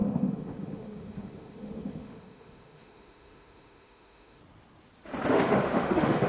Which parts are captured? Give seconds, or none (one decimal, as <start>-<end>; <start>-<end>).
4.4-5.3